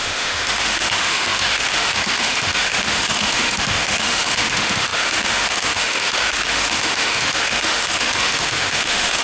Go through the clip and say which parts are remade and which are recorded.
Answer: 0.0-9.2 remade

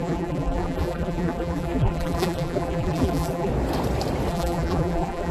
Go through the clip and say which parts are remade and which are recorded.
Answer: 0.0-3.5 remade; 3.5-4.3 recorded; 4.3-5.3 remade

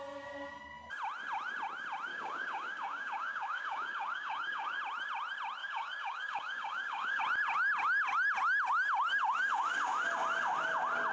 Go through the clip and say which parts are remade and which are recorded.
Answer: 0.0-2.1 recorded; 2.1-4.8 remade; 4.8-5.6 recorded; 5.6-7.2 remade; 7.2-11.1 recorded

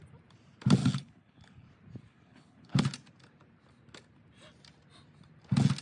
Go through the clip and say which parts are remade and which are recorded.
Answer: 0.0-0.8 recorded; 0.8-1.7 remade; 1.7-2.1 recorded; 2.1-2.8 remade; 2.8-5.8 recorded

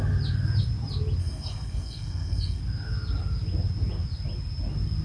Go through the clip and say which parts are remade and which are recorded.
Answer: 0.0-1.2 recorded; 1.2-2.6 remade; 2.6-5.0 recorded

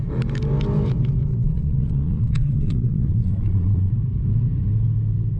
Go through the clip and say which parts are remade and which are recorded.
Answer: 0.0-1.3 recorded; 1.3-3.9 remade; 3.9-5.4 recorded